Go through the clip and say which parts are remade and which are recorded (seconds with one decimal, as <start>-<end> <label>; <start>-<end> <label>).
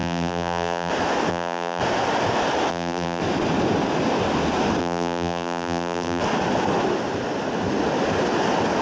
0.0-0.9 remade; 0.9-1.3 recorded; 1.3-1.8 remade; 1.8-2.7 recorded; 2.7-3.2 remade; 3.2-4.8 recorded; 4.8-6.2 remade; 6.2-8.8 recorded